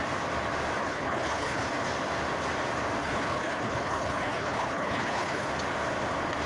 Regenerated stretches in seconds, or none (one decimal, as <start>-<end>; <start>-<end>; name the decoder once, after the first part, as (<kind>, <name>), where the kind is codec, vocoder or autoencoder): 0.8-1.7 (codec, HILCodec); 3.0-5.5